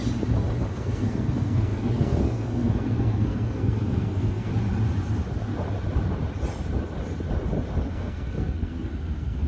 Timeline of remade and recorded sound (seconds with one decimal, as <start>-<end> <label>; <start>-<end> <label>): 0.0-0.7 recorded; 0.7-4.5 remade; 4.5-7.9 recorded; 7.9-9.5 remade